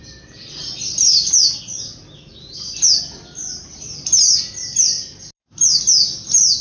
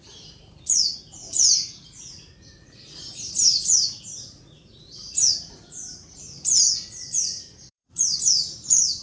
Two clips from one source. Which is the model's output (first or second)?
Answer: second